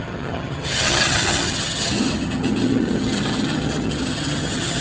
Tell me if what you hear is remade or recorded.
remade